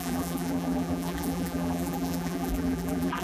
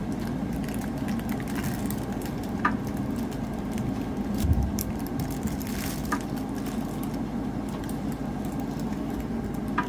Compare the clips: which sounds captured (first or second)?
second